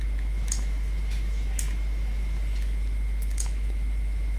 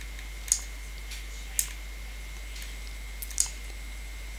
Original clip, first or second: second